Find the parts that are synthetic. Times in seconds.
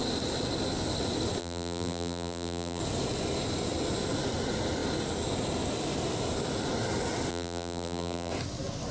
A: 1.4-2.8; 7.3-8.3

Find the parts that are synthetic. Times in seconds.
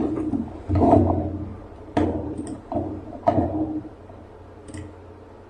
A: 0.0-1.0; 1.5-4.7